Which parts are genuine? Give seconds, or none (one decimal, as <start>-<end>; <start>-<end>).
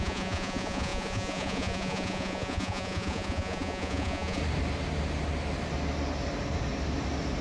4.4-7.4